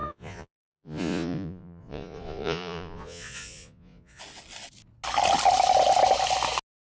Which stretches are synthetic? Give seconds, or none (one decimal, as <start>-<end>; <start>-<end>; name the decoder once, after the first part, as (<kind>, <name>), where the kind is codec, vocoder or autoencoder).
0.0-4.2 (vocoder, Vocos)